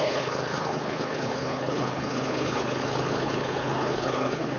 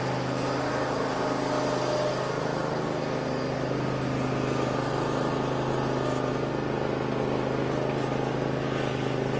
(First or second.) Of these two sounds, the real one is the second